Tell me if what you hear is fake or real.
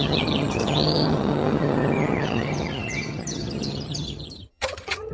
fake